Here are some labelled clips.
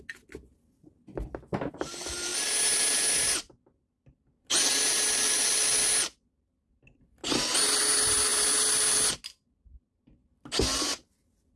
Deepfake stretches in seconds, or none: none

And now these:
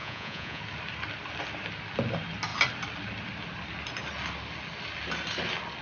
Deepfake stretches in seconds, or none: 0.0-0.6 (vocoder, Vocos)

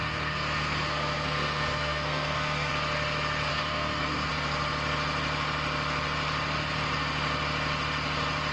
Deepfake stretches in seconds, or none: 0.0-2.7 (codec, SNAC); 3.5-4.3

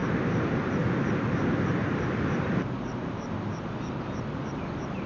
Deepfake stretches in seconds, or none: none